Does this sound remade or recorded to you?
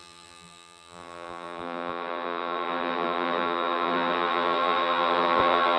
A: remade